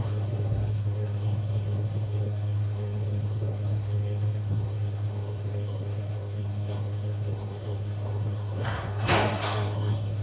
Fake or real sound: fake